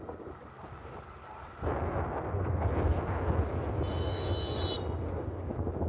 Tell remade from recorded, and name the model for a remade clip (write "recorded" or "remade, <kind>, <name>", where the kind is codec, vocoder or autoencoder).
recorded